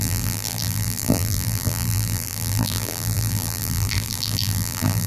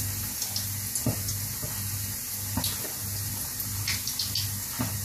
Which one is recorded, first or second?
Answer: second